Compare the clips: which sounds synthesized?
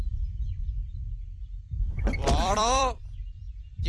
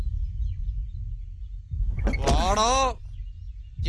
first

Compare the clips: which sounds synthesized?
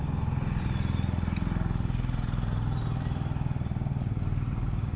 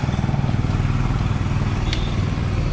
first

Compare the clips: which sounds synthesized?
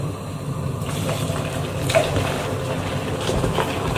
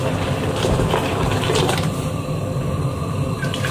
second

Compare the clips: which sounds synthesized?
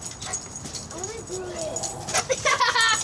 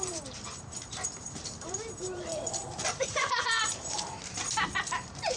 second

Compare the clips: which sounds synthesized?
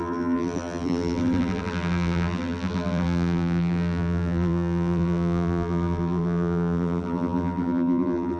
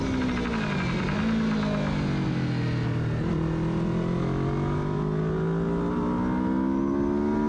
first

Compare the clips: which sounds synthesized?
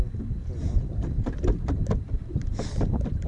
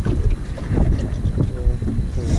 first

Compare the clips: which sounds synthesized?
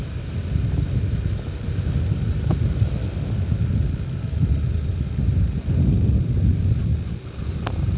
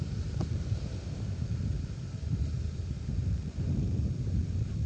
second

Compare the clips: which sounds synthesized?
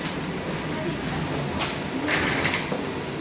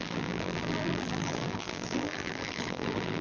second